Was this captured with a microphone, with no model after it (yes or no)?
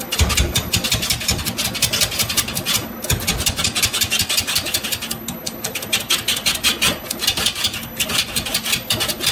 yes